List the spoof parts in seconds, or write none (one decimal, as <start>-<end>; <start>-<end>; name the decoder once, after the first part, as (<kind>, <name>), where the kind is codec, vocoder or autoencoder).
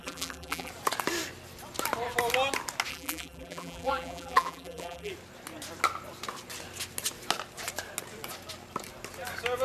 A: 0.0-0.7 (vocoder, BigVGAN v2); 2.9-5.1